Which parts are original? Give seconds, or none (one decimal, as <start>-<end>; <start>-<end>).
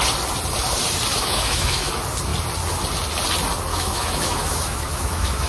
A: 0.0-1.1; 1.9-3.7